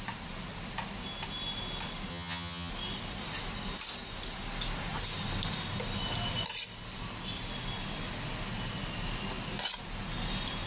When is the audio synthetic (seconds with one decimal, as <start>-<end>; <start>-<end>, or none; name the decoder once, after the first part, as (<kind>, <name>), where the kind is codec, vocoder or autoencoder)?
2.1-2.7 (vocoder, HiFi-GAN)